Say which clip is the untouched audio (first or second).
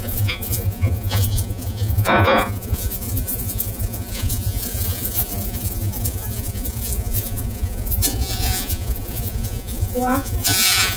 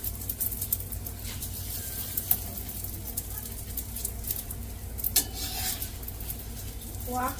second